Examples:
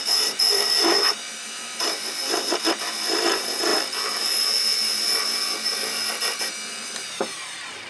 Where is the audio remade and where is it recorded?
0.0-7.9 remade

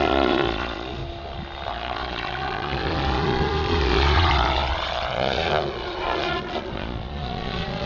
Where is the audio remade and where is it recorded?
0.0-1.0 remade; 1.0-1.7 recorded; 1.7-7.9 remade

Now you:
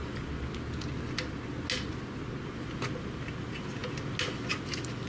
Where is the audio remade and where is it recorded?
0.0-5.1 recorded